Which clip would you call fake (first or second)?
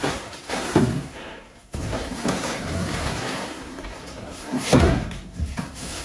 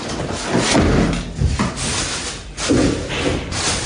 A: first